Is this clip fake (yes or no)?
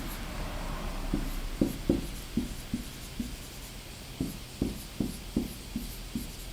no